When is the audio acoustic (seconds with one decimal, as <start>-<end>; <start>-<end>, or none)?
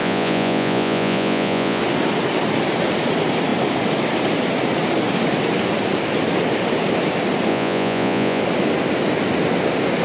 1.8-7.5; 8.4-10.0